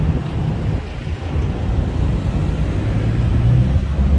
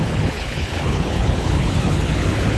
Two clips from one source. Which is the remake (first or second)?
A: second